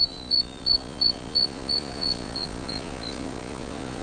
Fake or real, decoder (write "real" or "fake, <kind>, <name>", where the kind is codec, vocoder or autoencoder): fake, vocoder, Vocos